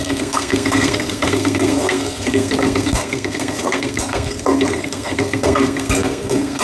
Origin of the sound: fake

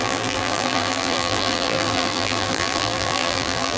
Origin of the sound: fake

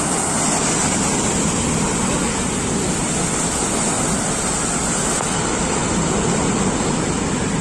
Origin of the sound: real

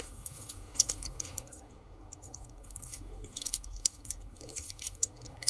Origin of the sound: fake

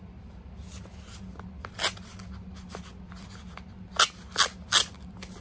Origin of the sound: real